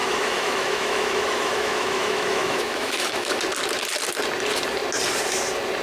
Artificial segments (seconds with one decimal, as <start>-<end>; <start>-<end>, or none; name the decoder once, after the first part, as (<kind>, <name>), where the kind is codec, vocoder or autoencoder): 0.0-3.4 (autoencoder, DAC-VAE)